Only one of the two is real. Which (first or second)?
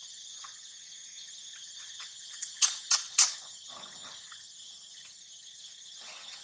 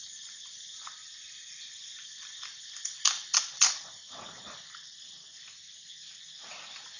second